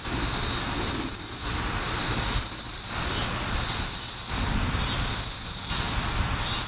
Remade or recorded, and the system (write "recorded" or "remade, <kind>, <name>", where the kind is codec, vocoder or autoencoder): recorded